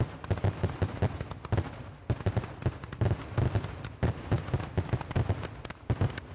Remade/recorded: recorded